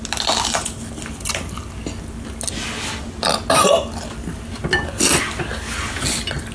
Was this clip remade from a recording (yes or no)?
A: no